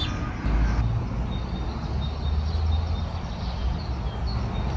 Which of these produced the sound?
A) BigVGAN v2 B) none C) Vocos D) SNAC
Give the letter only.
B